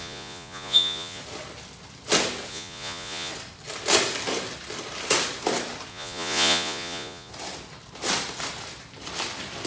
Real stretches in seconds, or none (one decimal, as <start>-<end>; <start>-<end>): 1.2-2.5; 3.3-5.9; 7.3-9.7